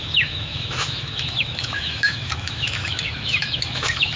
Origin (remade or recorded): remade